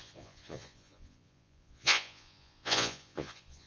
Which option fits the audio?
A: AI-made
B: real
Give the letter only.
A